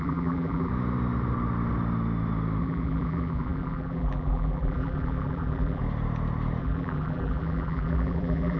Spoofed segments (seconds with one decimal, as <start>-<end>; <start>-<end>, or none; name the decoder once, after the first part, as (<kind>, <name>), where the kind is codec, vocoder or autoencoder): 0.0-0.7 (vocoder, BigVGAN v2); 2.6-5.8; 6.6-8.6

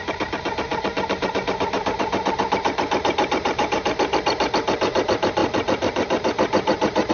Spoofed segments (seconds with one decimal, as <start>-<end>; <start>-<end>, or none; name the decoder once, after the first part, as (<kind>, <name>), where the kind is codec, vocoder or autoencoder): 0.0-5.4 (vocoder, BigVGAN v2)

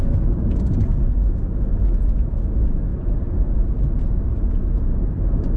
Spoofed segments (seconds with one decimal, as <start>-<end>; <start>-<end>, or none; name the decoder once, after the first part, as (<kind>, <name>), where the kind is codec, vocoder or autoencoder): 0.0-0.9 (vocoder, BigVGAN v2); 2.0-5.6

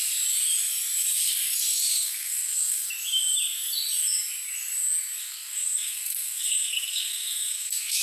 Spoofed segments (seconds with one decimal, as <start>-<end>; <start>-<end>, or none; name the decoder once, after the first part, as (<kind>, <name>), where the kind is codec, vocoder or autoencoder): 1.9-2.9 (codec, SNAC); 5.2-8.0

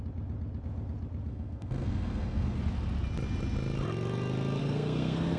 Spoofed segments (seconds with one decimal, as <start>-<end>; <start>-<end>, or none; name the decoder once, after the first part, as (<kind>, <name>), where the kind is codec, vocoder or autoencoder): 1.3-2.6 (codec, SNAC); 4.6-5.4